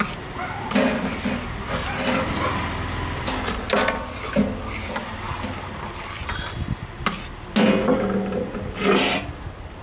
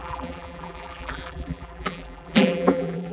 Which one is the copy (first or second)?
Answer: second